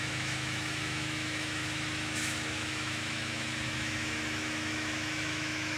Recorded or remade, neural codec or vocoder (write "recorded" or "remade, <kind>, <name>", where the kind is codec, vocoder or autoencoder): remade, autoencoder, DAC-VAE